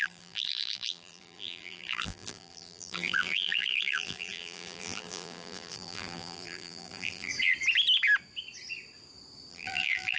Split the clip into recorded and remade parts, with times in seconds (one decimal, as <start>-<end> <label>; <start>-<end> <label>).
0.0-7.3 remade; 7.3-9.5 recorded; 9.5-10.2 remade